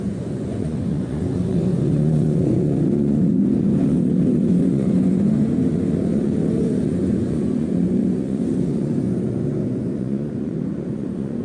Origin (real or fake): fake